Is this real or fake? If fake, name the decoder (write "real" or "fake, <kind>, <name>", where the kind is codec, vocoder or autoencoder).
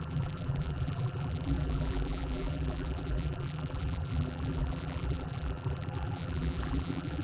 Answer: fake, vocoder, BigVGAN v2